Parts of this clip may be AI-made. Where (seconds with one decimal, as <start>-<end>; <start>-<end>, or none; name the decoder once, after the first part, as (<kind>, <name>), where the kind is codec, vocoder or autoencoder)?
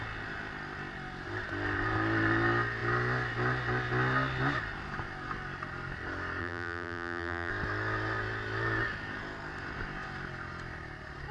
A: 6.4-7.5 (vocoder, BigVGAN v2)